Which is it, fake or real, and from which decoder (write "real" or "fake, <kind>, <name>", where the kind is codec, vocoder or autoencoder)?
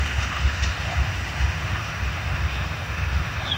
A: fake, autoencoder, DAC-VAE